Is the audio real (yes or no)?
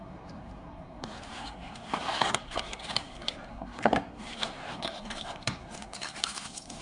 no